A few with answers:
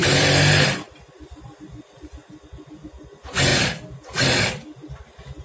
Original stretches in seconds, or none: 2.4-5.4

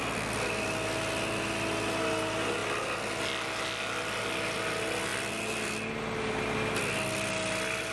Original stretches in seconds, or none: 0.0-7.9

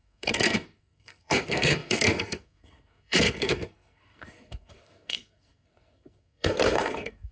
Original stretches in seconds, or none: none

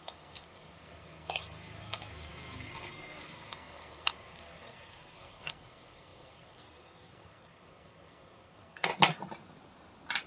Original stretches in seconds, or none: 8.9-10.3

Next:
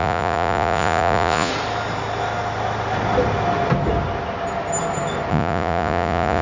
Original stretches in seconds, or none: 1.5-5.3

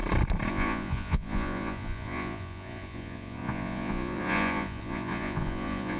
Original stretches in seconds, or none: 0.0-0.5